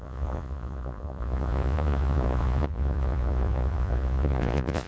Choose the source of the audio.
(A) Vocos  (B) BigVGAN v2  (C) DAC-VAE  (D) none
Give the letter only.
A